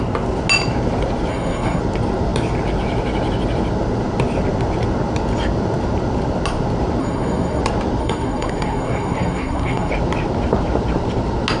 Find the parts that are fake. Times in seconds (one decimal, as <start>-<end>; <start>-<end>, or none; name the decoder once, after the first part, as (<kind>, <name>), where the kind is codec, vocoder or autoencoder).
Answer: 1.3-1.8 (codec, SNAC); 7.0-7.6; 8.0-9.9